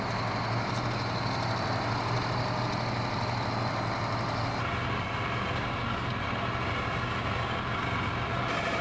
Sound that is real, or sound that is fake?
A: real